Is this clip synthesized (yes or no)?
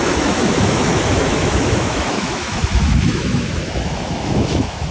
yes